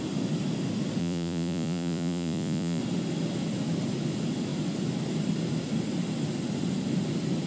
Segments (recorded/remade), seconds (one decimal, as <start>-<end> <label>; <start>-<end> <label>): 0.0-1.0 recorded; 1.0-2.8 remade; 2.8-7.5 recorded